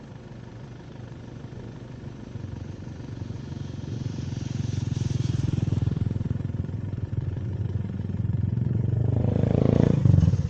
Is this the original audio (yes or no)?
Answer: no